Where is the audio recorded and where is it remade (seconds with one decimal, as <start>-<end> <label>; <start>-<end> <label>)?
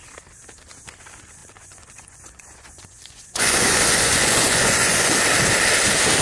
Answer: 0.0-1.4 recorded; 1.4-5.1 remade; 5.1-6.2 recorded